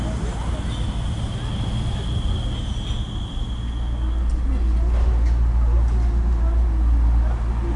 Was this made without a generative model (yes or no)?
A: yes